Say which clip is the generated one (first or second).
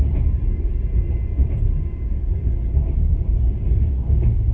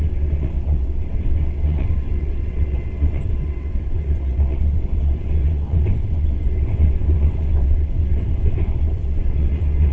second